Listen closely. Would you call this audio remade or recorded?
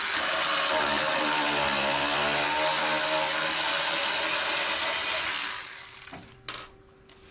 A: recorded